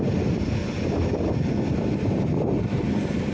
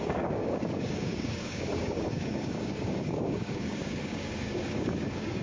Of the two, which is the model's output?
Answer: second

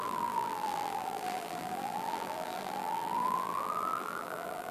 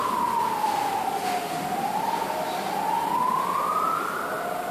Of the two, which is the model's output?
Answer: first